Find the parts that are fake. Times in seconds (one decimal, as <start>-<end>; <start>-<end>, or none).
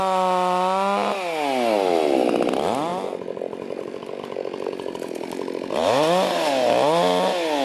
none